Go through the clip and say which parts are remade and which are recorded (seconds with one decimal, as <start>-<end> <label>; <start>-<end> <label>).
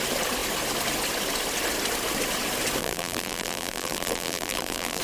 0.0-2.8 recorded; 2.8-5.0 remade